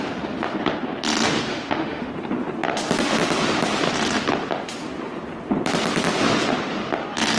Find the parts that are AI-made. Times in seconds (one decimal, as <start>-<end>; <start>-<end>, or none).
1.5-2.1